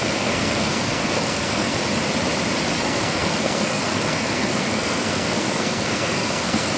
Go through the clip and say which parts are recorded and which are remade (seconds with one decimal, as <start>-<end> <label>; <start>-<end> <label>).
0.0-1.8 remade; 1.8-2.8 recorded; 2.8-6.8 remade